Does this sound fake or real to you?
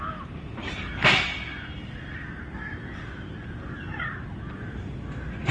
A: real